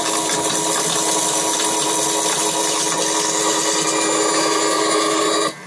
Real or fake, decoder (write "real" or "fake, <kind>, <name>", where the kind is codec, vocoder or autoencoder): real